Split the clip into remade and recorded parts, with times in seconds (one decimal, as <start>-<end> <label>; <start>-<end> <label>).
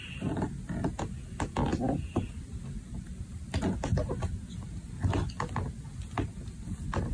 0.0-7.1 recorded